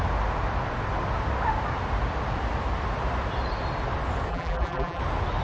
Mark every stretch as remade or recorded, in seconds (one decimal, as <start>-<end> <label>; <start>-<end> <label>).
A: 0.0-4.3 recorded; 4.3-5.0 remade; 5.0-5.4 recorded